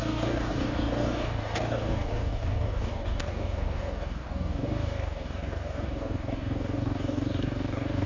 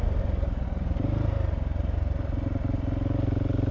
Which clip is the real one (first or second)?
second